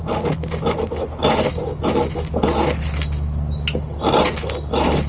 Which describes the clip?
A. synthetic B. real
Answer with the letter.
B